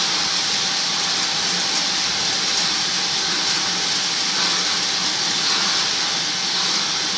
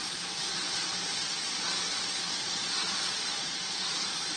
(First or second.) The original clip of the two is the first